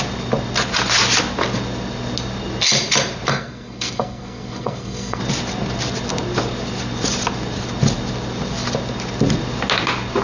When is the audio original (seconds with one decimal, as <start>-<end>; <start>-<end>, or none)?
0.0-3.3; 5.2-10.2